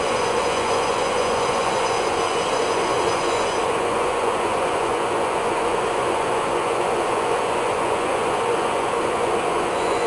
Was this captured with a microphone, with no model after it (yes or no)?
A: no